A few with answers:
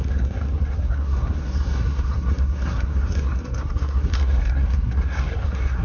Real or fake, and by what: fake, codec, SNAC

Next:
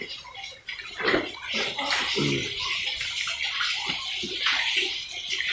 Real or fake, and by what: real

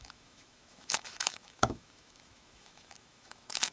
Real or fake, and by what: fake, autoencoder, DAC-VAE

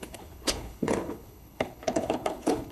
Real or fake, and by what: fake, codec, HILCodec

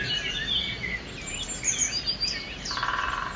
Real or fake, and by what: real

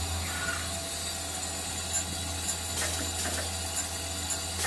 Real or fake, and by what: real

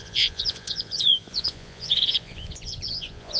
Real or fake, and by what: fake, vocoder, Vocos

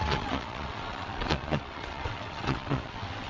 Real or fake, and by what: fake, vocoder, WaveNeXt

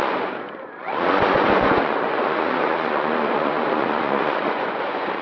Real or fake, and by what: fake, vocoder, Vocos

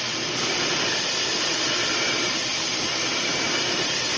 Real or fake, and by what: real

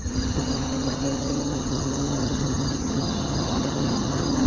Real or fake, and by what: fake, vocoder, HiFi-GAN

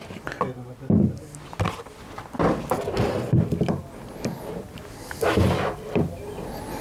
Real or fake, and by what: real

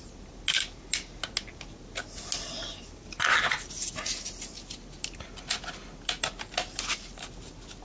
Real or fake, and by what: real